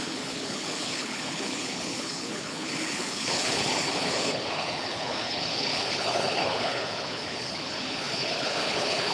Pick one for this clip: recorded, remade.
remade